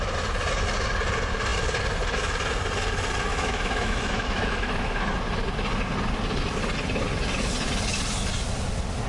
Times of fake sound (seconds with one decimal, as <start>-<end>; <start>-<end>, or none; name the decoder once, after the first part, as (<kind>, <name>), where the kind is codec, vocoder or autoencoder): 3.3-5.1 (autoencoder, DAC-VAE)